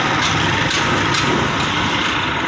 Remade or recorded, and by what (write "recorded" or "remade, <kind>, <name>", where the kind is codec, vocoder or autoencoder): recorded